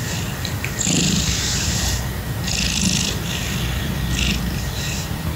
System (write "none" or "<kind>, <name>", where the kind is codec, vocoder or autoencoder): vocoder, BigVGAN v2